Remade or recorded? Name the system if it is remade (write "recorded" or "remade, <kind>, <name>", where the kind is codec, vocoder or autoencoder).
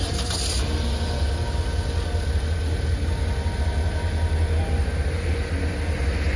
recorded